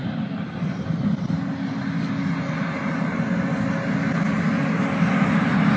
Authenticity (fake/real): real